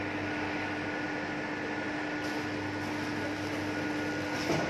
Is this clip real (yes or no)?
yes